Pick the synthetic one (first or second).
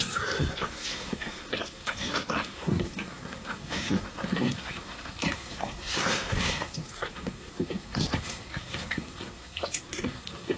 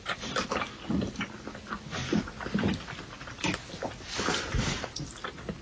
first